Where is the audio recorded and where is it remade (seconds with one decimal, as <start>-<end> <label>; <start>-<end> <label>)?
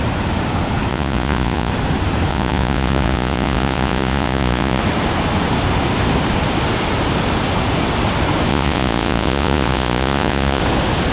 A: 0.0-0.9 recorded; 0.9-1.7 remade; 1.7-2.3 recorded; 2.3-4.8 remade; 4.8-8.5 recorded; 8.5-10.6 remade; 10.6-11.1 recorded